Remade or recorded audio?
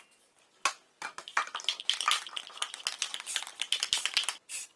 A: recorded